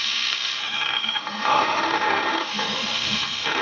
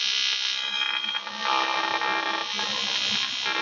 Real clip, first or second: second